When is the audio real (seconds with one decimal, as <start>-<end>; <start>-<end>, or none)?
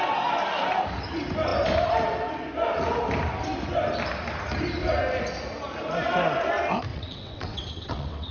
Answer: 0.0-6.9